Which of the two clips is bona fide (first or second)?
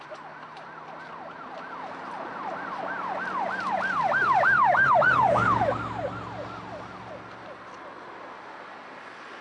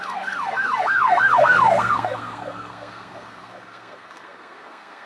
first